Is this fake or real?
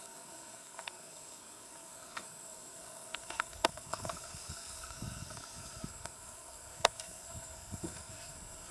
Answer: fake